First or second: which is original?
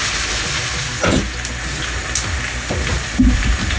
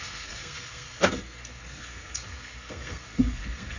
first